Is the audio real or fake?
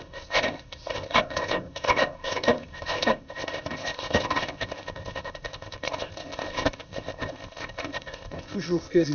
fake